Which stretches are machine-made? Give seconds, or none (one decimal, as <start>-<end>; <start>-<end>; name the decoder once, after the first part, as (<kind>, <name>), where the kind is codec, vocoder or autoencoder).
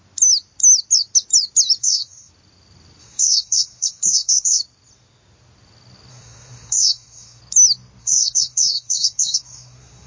1.8-2.3 (codec, SNAC); 3.0-4.6; 6.1-7.4; 8.0-10.1